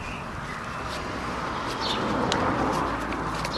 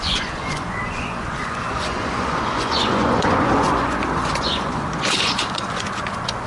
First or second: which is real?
first